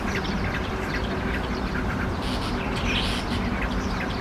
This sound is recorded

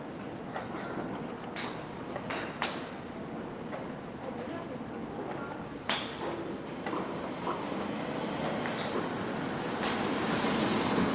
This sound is recorded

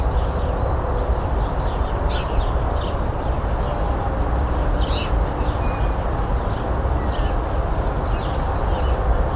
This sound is recorded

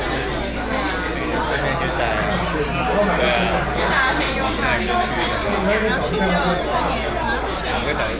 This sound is recorded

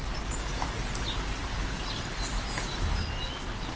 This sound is recorded